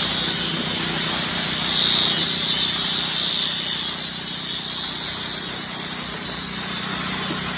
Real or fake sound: real